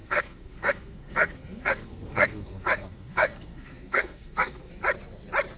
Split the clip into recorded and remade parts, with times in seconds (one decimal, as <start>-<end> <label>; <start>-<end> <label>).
0.0-4.7 remade; 4.7-5.6 recorded